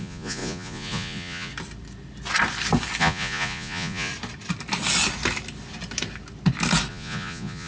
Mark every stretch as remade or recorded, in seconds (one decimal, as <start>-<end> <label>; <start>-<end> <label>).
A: 0.0-1.5 remade; 1.5-3.0 recorded; 3.0-4.1 remade; 4.1-6.9 recorded; 6.9-7.7 remade